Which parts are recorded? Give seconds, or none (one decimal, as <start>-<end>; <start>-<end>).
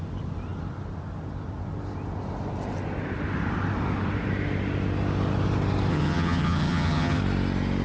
0.0-5.9; 7.2-7.8